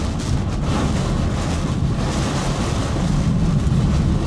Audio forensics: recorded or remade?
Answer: recorded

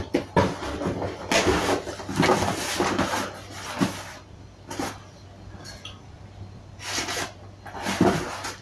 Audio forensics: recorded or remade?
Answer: recorded